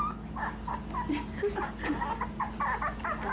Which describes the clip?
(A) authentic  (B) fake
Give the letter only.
A